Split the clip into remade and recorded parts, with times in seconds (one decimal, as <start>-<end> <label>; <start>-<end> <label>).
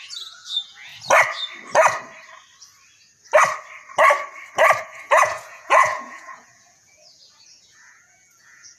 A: 0.0-0.9 remade; 0.9-4.8 recorded; 4.8-8.8 remade